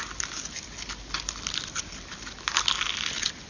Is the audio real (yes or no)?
yes